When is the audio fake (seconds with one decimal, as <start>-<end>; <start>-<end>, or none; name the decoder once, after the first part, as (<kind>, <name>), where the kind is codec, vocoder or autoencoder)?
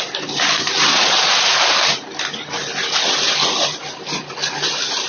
0.9-1.4 (vocoder, Vocos)